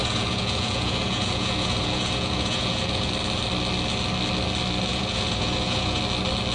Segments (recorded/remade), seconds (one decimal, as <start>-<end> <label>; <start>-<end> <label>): 0.0-3.1 remade; 3.1-4.9 recorded; 4.9-6.0 remade; 6.0-6.5 recorded